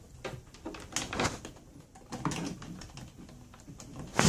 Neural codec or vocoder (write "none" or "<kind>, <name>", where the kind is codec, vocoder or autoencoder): none